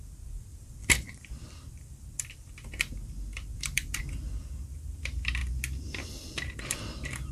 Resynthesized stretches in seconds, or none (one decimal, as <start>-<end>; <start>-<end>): 0.0-5.4; 6.6-7.3